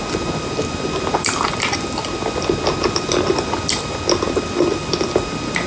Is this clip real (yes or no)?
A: yes